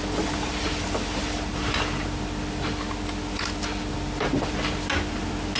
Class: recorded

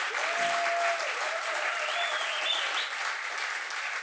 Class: recorded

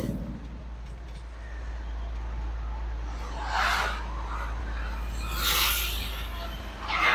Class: recorded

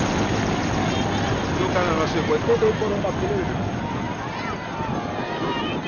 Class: recorded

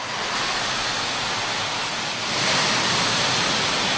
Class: recorded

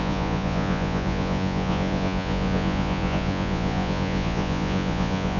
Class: remade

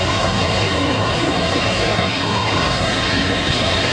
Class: remade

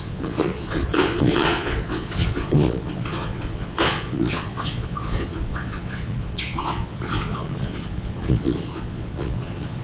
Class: remade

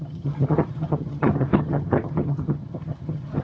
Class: remade